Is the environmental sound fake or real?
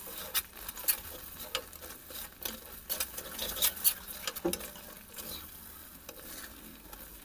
real